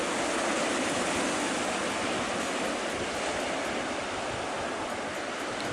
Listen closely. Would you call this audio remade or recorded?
recorded